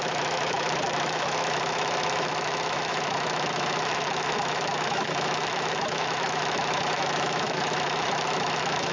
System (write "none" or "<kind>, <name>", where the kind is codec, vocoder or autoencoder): autoencoder, DAC-VAE